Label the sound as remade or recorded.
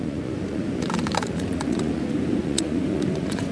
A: remade